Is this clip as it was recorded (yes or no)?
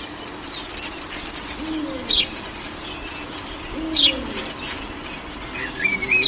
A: yes